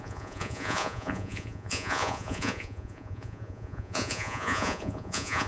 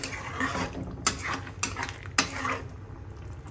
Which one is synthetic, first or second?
first